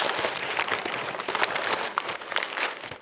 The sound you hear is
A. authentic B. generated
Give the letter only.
A